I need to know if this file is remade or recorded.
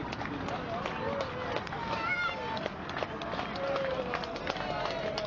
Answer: recorded